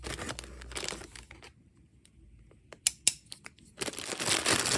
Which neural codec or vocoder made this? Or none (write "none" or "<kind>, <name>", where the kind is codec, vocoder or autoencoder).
none